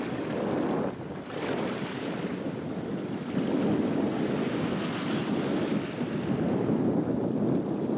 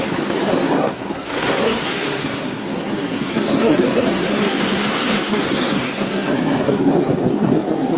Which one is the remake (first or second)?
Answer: second